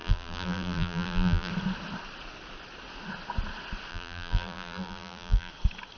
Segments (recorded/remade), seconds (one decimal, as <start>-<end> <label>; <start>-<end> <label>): 0.0-1.5 remade; 1.5-3.9 recorded; 3.9-5.5 remade; 5.5-6.0 recorded